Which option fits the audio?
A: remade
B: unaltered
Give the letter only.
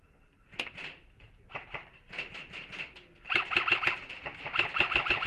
B